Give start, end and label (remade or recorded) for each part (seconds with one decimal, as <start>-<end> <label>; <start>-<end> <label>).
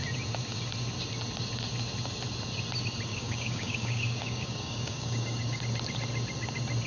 0.0-3.1 recorded; 3.1-5.6 remade; 5.6-6.9 recorded